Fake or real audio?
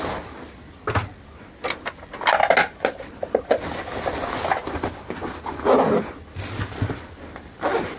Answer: real